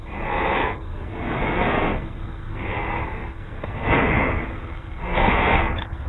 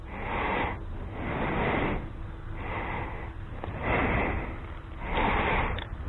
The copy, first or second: first